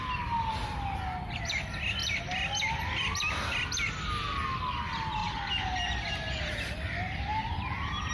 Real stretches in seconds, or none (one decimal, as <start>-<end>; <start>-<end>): 0.0-5.2